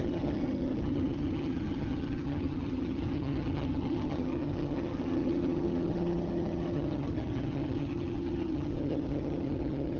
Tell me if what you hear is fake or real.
fake